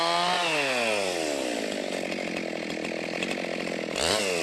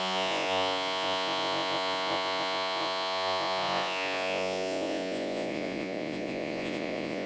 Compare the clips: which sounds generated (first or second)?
second